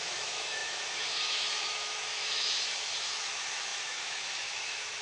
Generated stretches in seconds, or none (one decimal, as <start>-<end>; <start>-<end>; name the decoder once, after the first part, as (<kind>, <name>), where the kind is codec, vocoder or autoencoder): 0.0-5.0 (autoencoder, DAC-VAE)